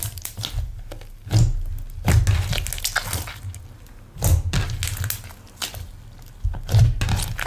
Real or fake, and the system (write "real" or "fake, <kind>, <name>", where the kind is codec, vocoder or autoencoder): real